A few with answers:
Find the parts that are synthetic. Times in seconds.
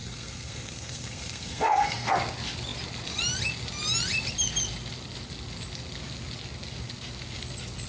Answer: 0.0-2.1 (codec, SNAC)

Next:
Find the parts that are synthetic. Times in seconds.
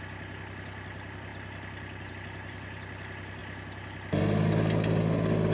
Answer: none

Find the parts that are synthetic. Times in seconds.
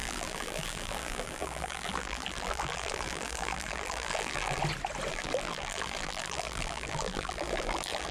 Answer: 0.0-4.6 (vocoder, BigVGAN v2); 5.1-8.1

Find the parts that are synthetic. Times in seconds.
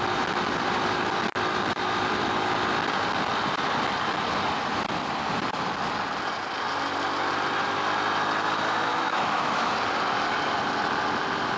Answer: 8.9-9.7 (autoencoder, DAC-VAE)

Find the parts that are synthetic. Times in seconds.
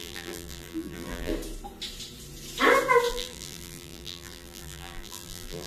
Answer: 0.0-1.3 (vocoder, BigVGAN v2); 3.1-5.7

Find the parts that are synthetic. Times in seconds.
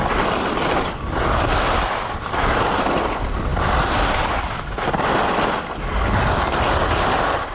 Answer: none